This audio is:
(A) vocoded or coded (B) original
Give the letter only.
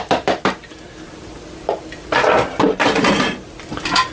B